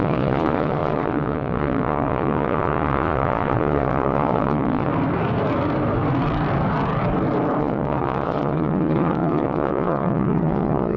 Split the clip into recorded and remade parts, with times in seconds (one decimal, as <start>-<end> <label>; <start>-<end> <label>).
0.0-4.9 remade; 4.9-7.6 recorded; 7.6-11.0 remade